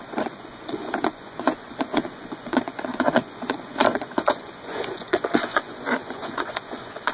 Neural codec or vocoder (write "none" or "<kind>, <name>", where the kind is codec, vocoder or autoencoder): vocoder, Vocos